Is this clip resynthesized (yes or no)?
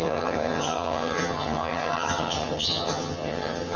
yes